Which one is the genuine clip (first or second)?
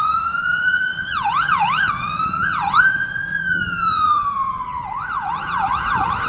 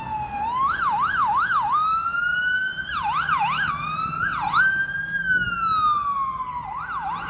second